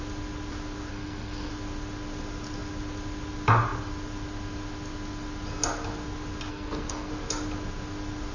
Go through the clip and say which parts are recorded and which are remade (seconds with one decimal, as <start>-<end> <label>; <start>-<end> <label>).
0.0-0.9 recorded; 0.9-1.5 remade; 1.5-6.5 recorded; 6.5-7.1 remade; 7.1-8.3 recorded

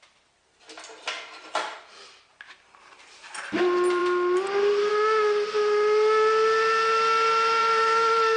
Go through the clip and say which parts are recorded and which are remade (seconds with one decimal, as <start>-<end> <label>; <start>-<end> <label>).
0.0-2.3 recorded; 2.3-3.6 remade; 3.6-7.6 recorded; 7.6-8.4 remade

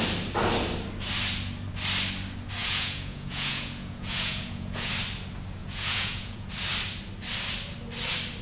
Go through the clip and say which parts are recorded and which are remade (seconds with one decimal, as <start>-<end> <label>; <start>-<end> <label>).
0.0-2.6 recorded; 2.6-4.9 remade; 4.9-5.6 recorded; 5.6-6.5 remade; 6.5-8.4 recorded

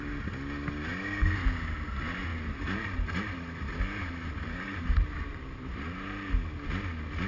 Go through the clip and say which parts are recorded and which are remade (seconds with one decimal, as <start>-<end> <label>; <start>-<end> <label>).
0.0-2.3 recorded; 2.3-6.3 remade; 6.3-7.3 recorded